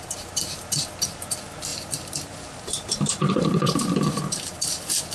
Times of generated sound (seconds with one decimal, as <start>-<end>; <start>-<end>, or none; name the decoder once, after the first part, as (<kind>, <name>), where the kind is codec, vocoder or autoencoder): 1.7-5.1 (vocoder, BigVGAN v2)